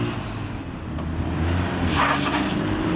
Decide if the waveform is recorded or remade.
recorded